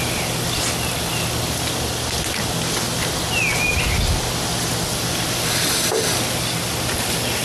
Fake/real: real